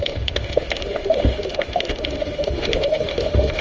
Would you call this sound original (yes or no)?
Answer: no